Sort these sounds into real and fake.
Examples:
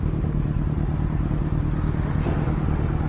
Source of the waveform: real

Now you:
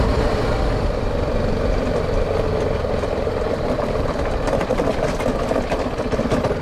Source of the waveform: fake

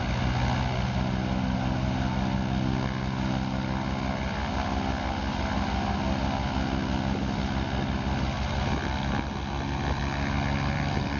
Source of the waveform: real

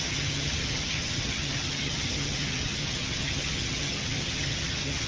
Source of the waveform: fake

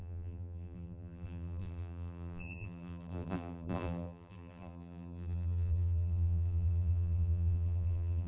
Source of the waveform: fake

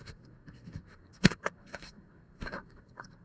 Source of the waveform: fake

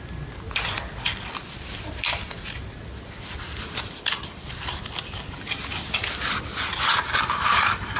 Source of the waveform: real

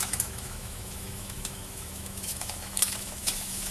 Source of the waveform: fake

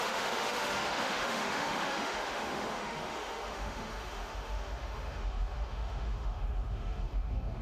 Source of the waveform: fake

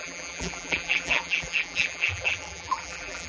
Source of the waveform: fake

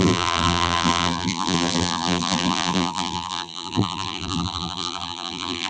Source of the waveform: fake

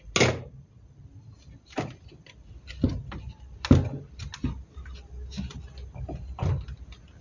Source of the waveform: real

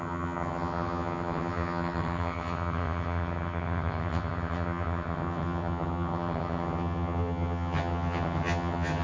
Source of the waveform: fake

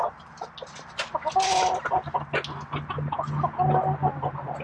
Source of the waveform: real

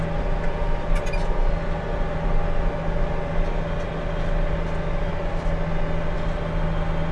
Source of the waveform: real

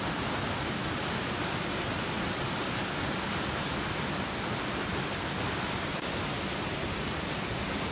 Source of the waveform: real